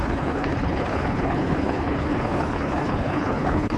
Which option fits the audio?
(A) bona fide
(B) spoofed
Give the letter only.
B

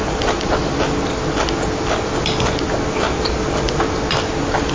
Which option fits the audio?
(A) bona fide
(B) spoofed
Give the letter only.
A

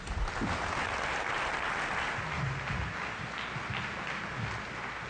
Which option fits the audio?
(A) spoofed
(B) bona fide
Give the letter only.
B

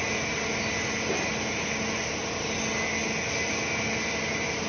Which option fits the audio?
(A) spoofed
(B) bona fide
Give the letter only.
B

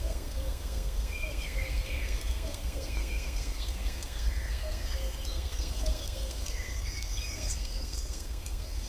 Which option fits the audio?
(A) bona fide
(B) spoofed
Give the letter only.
B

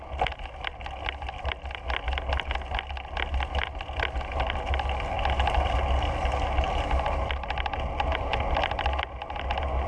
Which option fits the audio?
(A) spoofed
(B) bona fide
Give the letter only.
B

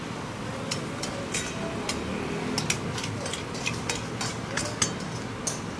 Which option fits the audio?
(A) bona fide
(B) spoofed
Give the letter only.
A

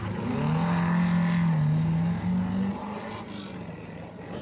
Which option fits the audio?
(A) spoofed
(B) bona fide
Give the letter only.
B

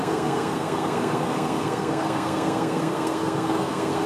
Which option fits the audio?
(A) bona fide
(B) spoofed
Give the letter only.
B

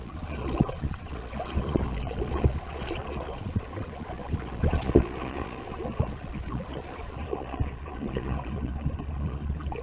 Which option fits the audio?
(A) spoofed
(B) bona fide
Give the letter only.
A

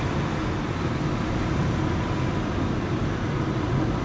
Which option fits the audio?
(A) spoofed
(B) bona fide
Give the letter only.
B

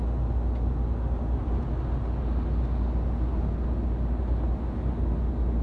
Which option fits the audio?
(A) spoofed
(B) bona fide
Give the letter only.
B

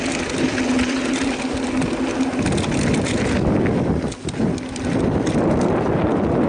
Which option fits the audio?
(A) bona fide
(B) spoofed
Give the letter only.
A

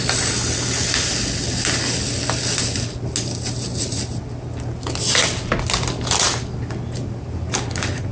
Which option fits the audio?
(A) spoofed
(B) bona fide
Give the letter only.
B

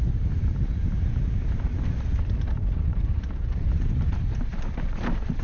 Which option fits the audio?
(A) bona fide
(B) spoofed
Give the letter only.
A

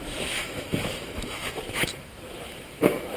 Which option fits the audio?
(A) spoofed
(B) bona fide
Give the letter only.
A